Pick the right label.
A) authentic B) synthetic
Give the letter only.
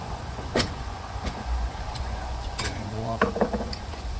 B